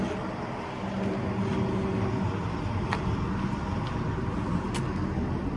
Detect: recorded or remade recorded